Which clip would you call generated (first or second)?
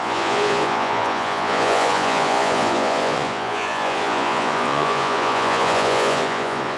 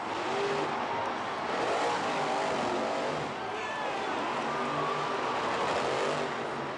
first